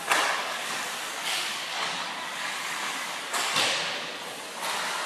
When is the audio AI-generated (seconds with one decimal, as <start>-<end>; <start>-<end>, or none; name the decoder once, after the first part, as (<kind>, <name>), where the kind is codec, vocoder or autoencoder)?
0.4-3.5 (codec, DAC)